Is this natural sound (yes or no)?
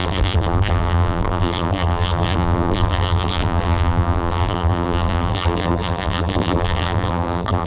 no